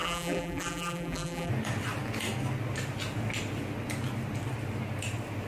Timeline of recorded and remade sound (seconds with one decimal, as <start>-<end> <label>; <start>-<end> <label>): 0.0-1.5 remade; 1.5-5.5 recorded